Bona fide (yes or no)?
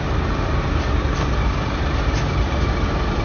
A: no